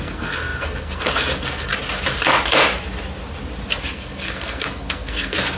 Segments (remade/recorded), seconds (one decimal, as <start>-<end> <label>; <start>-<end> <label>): 0.0-1.7 remade; 1.7-3.9 recorded; 3.9-5.6 remade